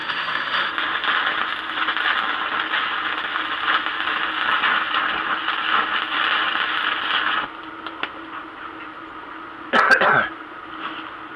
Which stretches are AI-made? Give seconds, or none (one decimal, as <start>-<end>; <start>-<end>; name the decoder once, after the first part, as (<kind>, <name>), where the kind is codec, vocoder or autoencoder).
0.0-0.7 (autoencoder, DAC-VAE)